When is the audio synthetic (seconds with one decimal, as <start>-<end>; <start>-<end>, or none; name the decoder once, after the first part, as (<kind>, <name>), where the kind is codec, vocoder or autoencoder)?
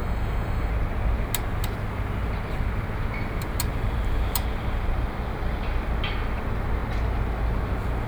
0.0-0.7 (autoencoder, DAC-VAE)